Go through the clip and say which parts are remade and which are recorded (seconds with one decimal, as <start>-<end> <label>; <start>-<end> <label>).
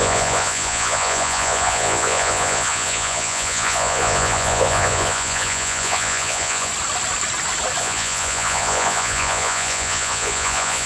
0.0-6.7 remade; 6.7-7.8 recorded; 7.8-10.9 remade